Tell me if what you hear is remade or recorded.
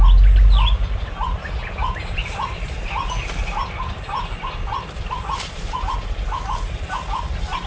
recorded